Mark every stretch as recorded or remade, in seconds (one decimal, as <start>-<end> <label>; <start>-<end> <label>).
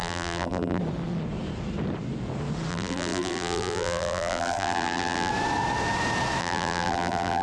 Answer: 0.0-0.8 remade; 0.8-2.7 recorded; 2.7-5.3 remade; 5.3-6.4 recorded; 6.4-7.4 remade